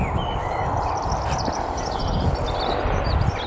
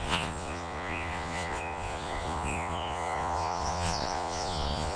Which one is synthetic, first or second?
second